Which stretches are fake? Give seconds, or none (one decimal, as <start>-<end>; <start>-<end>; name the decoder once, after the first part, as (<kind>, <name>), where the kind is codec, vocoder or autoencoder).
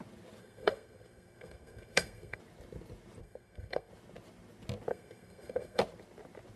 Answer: 0.4-2.4 (codec, SNAC); 3.2-3.9; 4.9-5.8